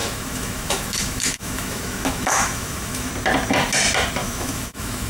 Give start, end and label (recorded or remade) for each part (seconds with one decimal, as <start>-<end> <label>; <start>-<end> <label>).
0.0-3.1 remade; 3.1-4.2 recorded; 4.2-5.1 remade